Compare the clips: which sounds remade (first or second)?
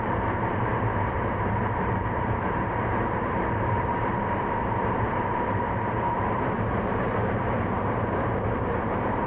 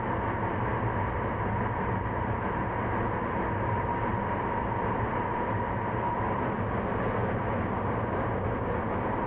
first